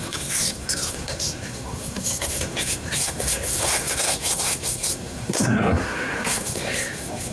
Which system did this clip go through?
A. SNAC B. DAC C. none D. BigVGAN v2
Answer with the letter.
A